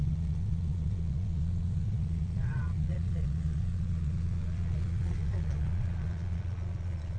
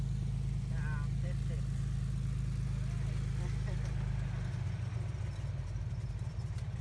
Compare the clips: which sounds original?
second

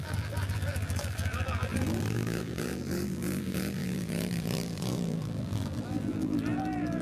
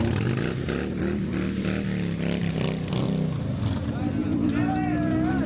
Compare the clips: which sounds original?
second